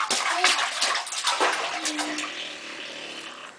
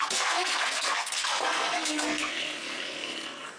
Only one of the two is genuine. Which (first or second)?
first